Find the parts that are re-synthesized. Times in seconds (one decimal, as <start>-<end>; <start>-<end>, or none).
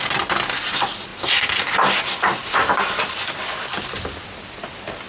1.1-4.2